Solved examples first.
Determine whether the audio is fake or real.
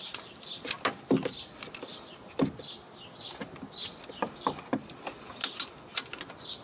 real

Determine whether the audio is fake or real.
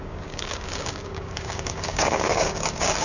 fake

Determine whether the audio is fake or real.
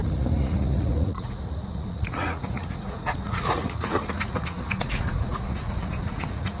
fake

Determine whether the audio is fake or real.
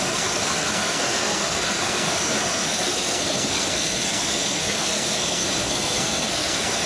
fake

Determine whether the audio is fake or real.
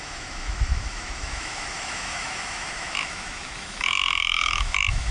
fake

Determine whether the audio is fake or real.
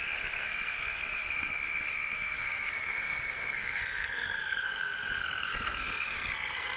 fake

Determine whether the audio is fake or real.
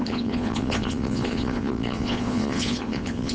fake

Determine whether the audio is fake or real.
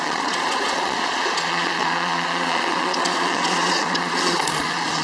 fake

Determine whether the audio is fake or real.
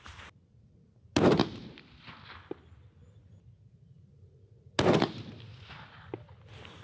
real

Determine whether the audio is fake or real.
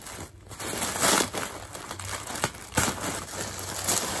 real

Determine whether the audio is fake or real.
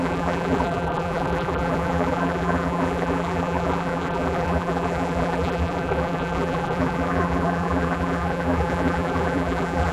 fake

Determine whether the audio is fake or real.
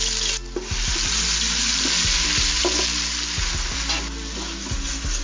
real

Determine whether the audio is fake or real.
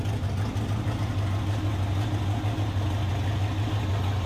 real